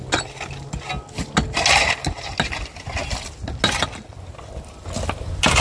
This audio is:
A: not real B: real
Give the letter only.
B